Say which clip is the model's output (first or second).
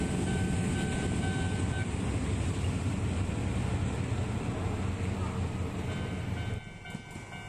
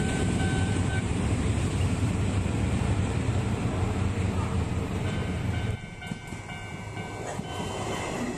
second